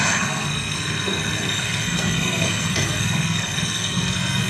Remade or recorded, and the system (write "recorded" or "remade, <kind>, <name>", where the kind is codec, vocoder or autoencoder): remade, codec, SNAC